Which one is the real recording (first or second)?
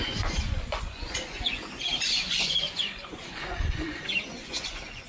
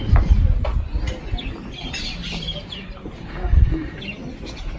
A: second